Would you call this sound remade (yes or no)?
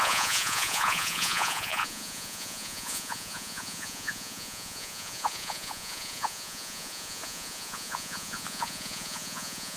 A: yes